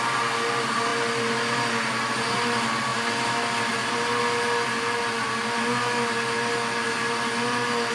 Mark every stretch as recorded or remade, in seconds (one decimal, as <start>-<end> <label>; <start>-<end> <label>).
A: 0.0-7.9 recorded